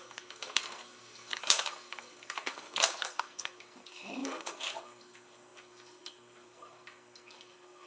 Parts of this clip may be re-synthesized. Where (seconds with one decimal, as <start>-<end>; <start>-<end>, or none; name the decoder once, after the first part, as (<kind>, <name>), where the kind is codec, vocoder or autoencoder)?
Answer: 0.0-7.9 (codec, SNAC)